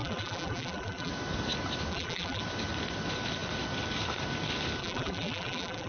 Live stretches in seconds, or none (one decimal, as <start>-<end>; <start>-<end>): 1.1-1.9; 2.4-4.8